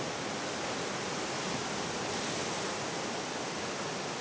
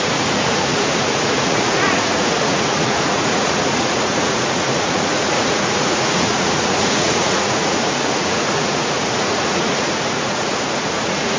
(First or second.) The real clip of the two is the first